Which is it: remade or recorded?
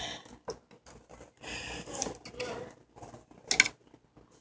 recorded